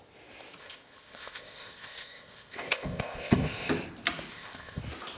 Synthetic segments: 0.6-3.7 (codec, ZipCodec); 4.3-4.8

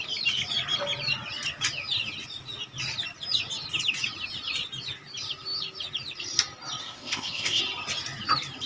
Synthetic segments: 6.8-7.6 (codec, ZipCodec)